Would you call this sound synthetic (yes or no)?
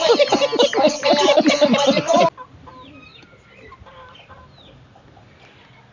no